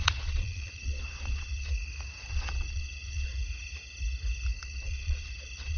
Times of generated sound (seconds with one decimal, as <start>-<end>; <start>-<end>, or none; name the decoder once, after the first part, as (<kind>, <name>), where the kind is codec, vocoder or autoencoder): 0.0-1.7 (vocoder, Vocos); 2.2-3.3; 4.6-5.8